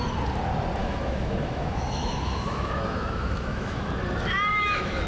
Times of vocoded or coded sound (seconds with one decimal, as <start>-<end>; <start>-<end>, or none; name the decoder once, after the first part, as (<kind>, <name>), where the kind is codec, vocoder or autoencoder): 0.8-3.9 (autoencoder, DAC-VAE); 4.5-5.1